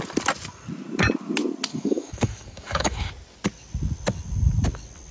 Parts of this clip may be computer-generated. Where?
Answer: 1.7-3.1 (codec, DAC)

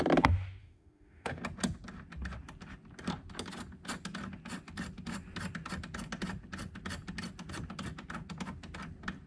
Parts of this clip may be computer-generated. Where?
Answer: 0.6-1.4 (autoencoder, DAC-VAE)

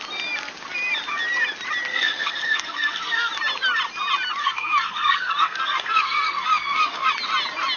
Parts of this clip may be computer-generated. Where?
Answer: 1.9-3.3 (codec, SNAC); 4.4-7.1

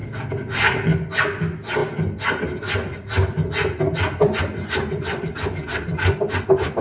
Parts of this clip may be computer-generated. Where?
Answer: 1.8-2.4 (vocoder, BigVGAN v2)

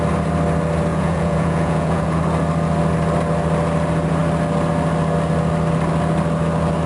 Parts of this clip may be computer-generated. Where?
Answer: 0.9-2.2 (vocoder, Vocos)

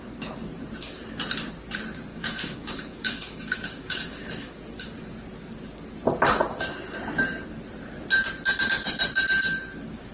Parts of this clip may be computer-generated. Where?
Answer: 2.1-4.6 (autoencoder, DAC-VAE)

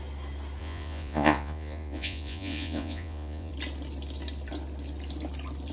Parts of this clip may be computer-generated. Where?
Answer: 0.6-3.5 (vocoder, Vocos)